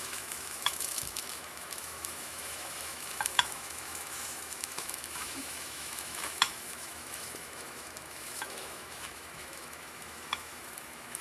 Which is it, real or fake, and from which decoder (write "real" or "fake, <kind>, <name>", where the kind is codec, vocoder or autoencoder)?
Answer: fake, autoencoder, DAC-VAE